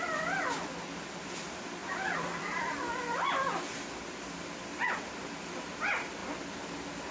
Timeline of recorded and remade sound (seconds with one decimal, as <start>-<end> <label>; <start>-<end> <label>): 0.0-6.2 remade; 6.2-7.1 recorded